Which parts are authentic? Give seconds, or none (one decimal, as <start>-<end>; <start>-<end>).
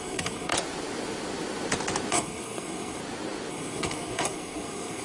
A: 0.5-2.1; 3.0-3.5